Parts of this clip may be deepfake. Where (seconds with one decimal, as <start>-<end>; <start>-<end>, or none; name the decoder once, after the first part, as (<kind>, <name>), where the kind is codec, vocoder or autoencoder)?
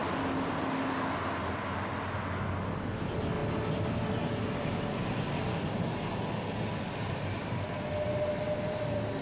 none